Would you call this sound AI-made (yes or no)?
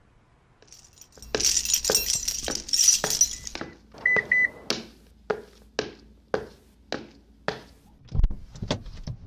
no